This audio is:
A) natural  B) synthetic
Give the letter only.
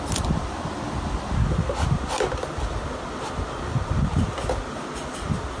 A